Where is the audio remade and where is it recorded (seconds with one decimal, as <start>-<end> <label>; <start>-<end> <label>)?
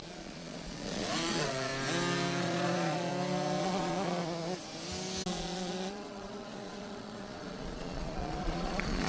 0.0-1.7 remade; 1.7-2.4 recorded; 2.4-3.1 remade; 3.1-3.6 recorded; 3.6-4.2 remade; 4.2-5.3 recorded; 5.3-9.1 remade